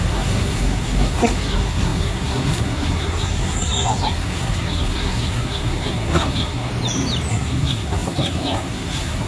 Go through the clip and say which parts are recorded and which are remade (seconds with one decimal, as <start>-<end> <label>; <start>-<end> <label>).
0.0-6.7 remade; 6.7-7.3 recorded; 7.3-9.3 remade